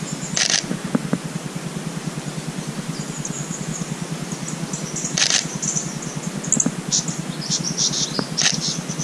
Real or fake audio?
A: real